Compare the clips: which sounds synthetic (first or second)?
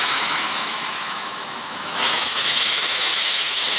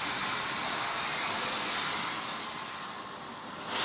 first